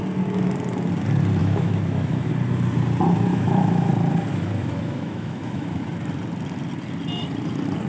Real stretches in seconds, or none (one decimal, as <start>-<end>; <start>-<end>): 0.0-1.4; 2.3-3.3; 3.9-4.3; 5.9-7.9

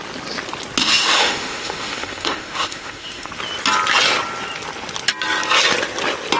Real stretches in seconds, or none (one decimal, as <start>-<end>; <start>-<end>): 0.0-0.8; 3.3-6.4

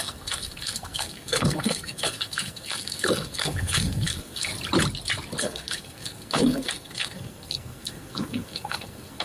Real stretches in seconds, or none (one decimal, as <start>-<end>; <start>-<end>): 4.5-5.4

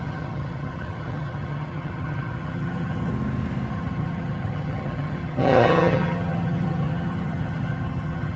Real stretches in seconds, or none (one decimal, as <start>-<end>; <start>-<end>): 3.1-3.7

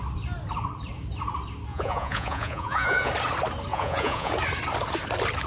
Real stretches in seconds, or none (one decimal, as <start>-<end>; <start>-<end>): 0.0-1.7; 3.1-3.7; 4.3-5.5

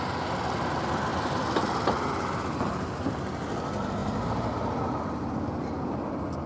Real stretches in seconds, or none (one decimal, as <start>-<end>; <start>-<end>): 0.0-6.5

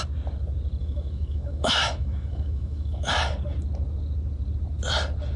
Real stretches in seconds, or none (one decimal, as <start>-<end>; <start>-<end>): 0.0-0.8; 3.1-5.4

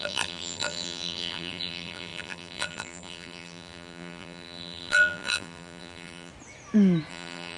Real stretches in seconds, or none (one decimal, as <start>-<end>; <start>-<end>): 6.3-7.1